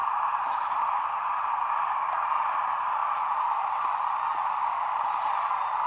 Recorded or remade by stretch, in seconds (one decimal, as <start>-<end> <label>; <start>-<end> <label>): 0.0-5.9 recorded